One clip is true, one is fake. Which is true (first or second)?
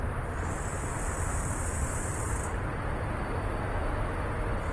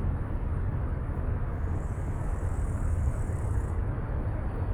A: first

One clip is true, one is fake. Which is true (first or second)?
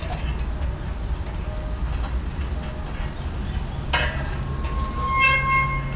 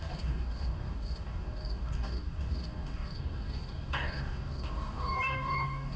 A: first